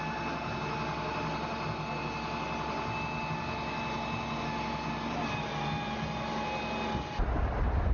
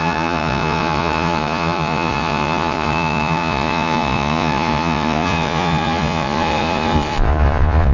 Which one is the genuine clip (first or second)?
first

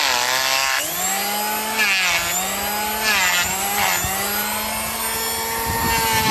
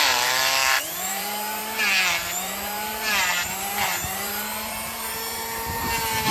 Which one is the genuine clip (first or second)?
first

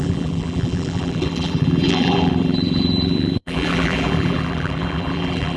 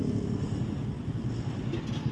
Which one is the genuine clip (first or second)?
second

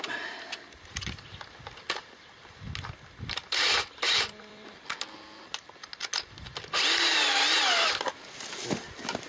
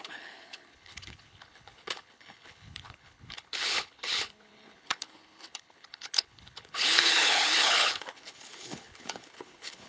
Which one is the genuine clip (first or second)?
first